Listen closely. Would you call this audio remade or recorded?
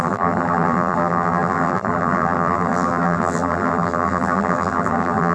remade